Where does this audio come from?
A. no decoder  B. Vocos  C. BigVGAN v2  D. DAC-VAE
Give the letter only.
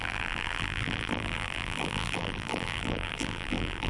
C